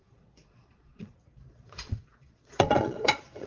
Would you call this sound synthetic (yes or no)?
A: yes